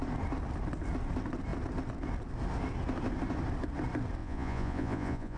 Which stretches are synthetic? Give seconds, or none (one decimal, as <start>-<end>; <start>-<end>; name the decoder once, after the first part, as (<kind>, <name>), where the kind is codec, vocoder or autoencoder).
4.2-5.4 (vocoder, Vocos)